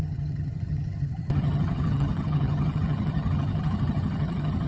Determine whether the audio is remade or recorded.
remade